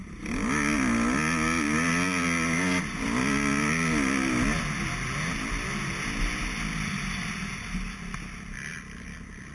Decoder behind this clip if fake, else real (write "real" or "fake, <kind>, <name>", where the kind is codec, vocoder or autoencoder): real